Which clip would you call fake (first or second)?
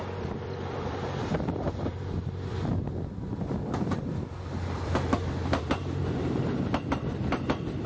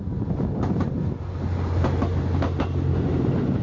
first